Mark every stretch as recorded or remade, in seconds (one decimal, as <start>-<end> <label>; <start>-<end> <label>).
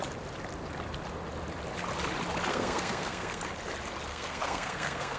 0.0-2.5 recorded; 2.5-3.4 remade; 3.4-4.1 recorded; 4.1-5.2 remade